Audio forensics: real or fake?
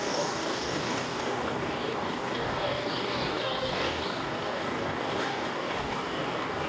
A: fake